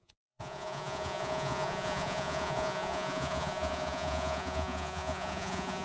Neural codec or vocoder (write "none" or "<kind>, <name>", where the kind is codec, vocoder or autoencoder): vocoder, Vocos